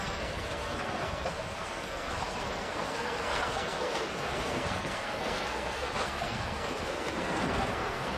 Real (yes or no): no